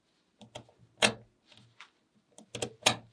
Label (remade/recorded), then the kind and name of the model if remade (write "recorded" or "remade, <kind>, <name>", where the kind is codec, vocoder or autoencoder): recorded